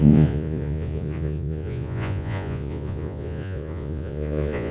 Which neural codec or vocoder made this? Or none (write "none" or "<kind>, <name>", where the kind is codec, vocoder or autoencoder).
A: vocoder, Vocos